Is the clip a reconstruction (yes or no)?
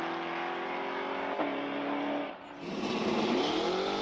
no